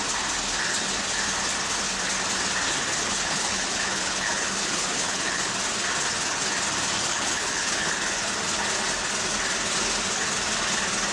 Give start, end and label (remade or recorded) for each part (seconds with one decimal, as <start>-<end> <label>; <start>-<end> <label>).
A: 0.0-3.0 recorded; 3.0-5.4 remade; 5.4-7.1 recorded; 7.1-7.9 remade; 7.9-11.1 recorded